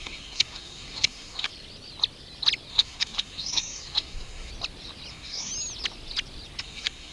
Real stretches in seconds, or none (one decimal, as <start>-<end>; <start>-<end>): 1.5-2.7; 4.5-5.1; 5.5-6.6